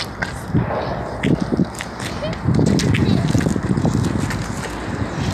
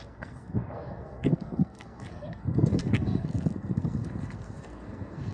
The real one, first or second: first